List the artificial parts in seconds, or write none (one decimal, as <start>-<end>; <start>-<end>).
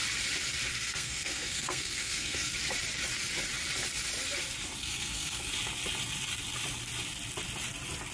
0.7-2.5; 4.8-5.5